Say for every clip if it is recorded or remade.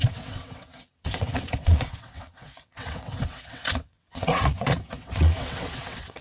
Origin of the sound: remade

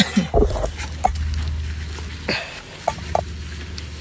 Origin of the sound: recorded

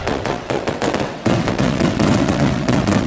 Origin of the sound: remade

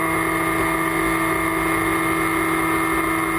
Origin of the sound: recorded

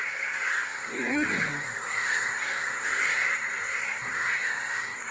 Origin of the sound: remade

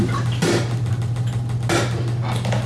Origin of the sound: recorded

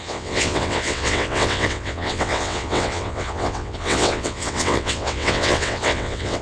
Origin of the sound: remade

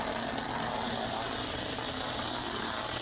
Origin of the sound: recorded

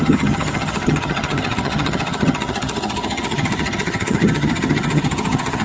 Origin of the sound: remade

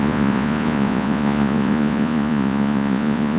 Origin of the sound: remade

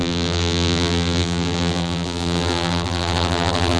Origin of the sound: remade